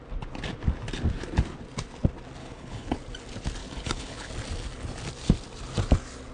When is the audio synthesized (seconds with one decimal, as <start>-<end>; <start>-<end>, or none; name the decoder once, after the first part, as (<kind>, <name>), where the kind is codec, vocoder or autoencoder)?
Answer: 2.4-3.0 (codec, HILCodec); 3.6-4.3